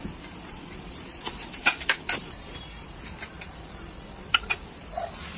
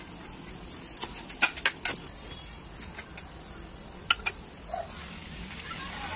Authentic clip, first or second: second